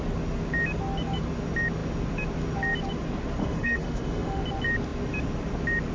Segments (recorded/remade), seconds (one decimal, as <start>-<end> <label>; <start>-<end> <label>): 0.0-3.4 recorded; 3.4-4.4 remade; 4.4-5.9 recorded